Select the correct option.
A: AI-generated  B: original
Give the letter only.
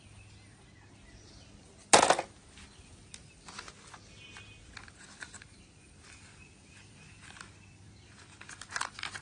B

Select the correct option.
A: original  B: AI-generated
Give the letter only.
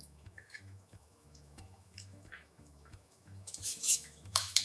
B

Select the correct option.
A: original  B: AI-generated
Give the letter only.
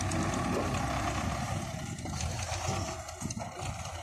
A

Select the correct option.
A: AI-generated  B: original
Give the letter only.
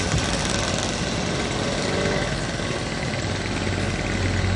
B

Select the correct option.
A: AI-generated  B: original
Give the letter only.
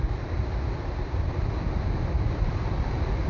B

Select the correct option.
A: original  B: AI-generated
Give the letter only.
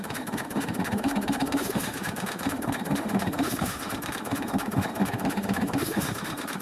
B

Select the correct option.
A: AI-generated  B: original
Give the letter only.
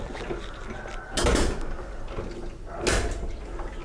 B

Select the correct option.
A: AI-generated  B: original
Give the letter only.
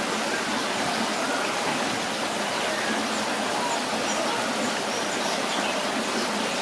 B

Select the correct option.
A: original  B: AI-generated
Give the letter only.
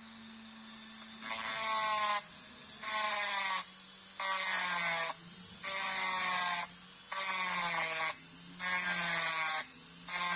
A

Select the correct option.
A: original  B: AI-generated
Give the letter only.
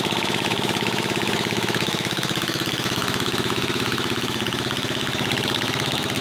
B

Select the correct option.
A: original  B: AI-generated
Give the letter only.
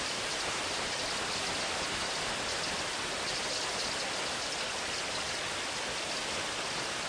A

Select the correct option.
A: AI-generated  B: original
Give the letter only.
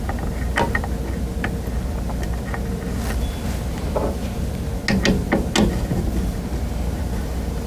B